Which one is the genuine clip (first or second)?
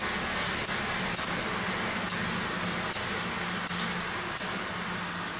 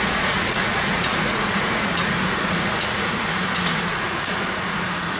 first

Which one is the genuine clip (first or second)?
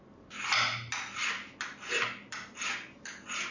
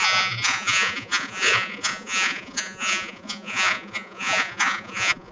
first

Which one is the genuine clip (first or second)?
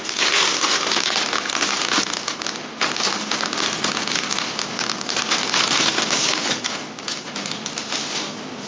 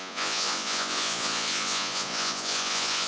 first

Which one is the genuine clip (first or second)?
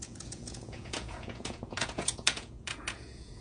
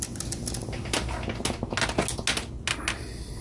second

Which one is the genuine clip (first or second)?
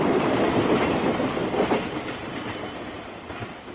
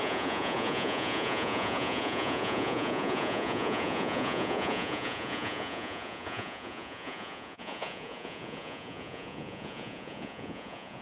first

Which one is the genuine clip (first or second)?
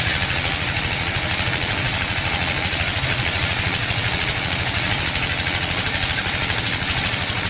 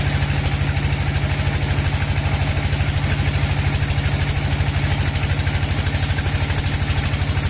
second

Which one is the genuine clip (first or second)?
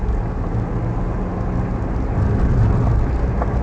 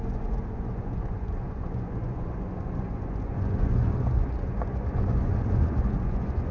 first